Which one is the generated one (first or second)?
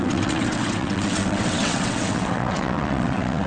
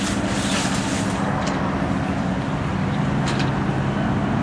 first